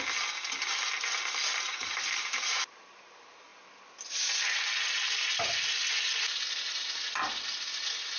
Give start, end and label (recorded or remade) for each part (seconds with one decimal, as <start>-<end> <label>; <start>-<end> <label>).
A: 0.0-1.7 recorded; 1.7-2.8 remade; 2.8-8.2 recorded